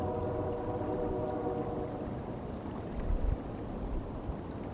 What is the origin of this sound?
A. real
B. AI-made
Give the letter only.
A